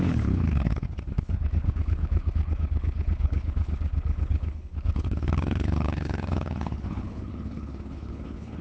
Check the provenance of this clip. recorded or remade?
remade